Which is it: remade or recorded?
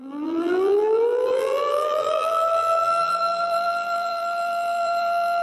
remade